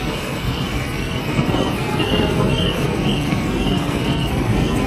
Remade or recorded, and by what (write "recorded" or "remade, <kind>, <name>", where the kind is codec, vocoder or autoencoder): remade, codec, SNAC